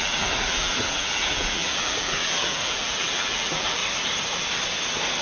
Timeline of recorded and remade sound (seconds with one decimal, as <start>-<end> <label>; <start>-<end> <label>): 0.0-3.8 remade; 3.8-5.2 recorded